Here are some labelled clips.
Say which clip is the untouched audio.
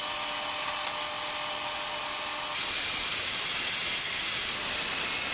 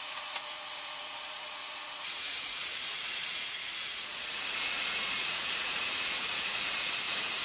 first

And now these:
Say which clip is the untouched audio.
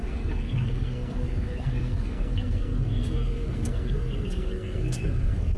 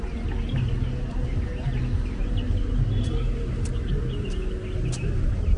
second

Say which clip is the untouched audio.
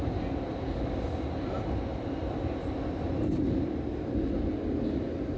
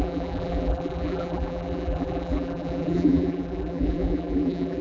first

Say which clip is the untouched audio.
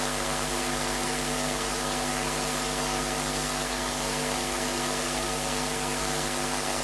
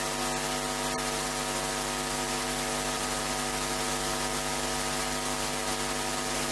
second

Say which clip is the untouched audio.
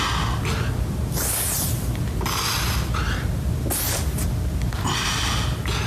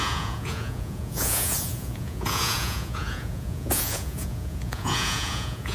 first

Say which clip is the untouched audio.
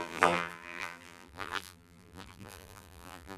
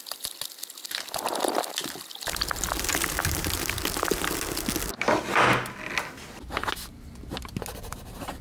second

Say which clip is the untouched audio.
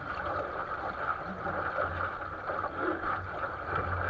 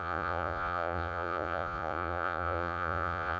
first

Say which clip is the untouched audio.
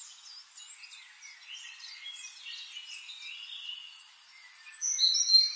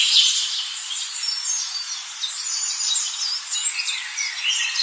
first